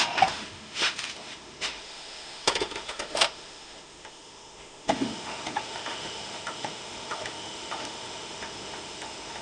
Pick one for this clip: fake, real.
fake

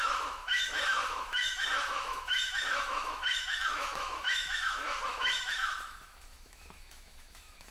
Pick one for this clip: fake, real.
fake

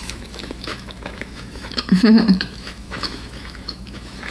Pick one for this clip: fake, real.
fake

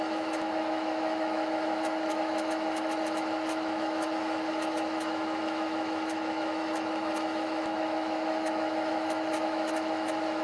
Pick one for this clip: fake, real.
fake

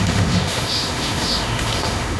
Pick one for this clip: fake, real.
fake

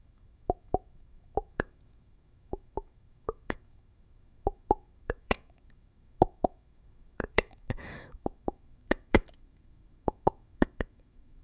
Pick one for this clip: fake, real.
fake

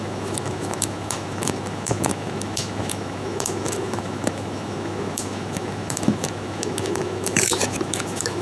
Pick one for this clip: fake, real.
fake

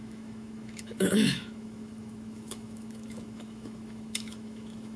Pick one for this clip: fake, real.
fake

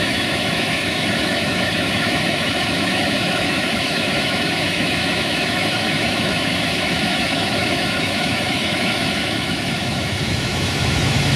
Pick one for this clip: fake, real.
fake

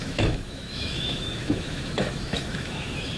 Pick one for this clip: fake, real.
fake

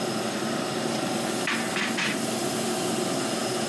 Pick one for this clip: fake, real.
real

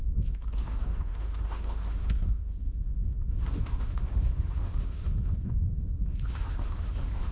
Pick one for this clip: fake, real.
fake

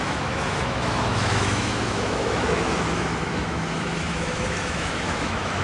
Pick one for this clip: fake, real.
fake